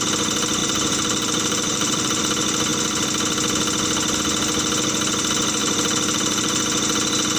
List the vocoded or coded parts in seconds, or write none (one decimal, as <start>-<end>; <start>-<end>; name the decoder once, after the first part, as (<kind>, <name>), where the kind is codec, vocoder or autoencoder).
0.6-2.2 (vocoder, BigVGAN v2); 5.6-6.6